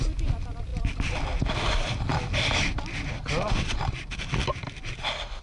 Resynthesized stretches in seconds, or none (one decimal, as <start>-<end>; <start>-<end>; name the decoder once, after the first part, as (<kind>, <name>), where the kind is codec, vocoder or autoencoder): none